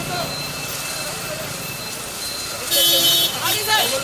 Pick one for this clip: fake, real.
real